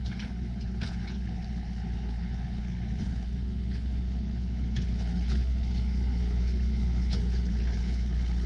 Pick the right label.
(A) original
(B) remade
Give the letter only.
B